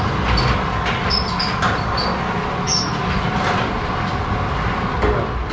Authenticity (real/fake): real